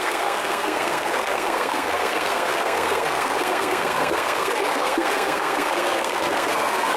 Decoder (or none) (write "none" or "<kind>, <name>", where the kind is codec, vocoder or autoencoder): codec, SNAC